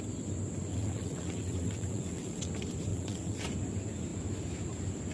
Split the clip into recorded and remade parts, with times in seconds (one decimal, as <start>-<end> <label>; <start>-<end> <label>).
0.0-0.7 recorded; 0.7-2.5 remade; 2.5-2.9 recorded; 2.9-3.4 remade; 3.4-5.1 recorded